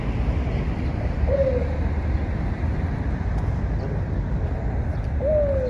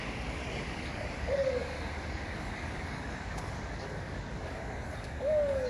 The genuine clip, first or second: first